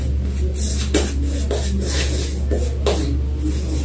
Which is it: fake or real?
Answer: real